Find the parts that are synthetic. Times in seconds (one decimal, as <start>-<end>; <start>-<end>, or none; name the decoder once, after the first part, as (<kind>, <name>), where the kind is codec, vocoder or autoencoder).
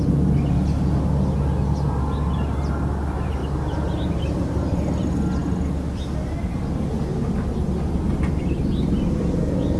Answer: 3.4-4.2 (vocoder, BigVGAN v2)